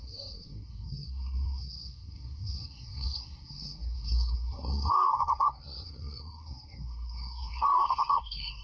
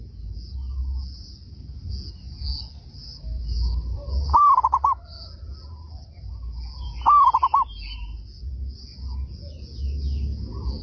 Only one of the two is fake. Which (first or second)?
first